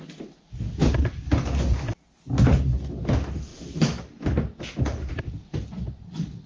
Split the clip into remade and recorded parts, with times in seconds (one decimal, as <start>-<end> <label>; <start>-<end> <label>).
0.0-6.5 recorded